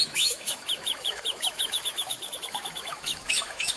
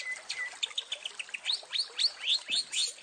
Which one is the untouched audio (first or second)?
second